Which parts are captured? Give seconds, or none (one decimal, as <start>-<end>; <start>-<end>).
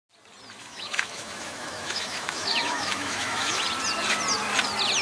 0.0-0.6; 3.6-5.0